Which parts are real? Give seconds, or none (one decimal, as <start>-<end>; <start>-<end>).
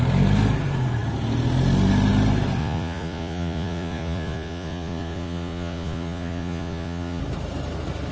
0.0-2.6; 7.2-8.1